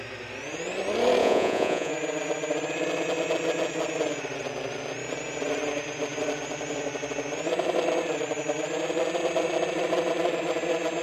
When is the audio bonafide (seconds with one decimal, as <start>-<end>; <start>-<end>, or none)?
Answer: 0.0-1.2; 1.9-11.0